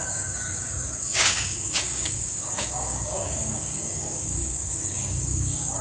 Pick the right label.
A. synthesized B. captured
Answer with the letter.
A